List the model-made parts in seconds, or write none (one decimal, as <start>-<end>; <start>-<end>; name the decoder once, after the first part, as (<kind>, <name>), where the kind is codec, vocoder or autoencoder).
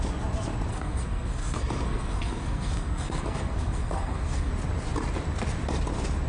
0.7-4.5 (codec, SNAC)